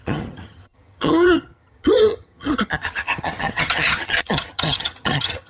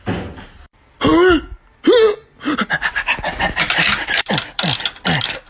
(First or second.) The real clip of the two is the second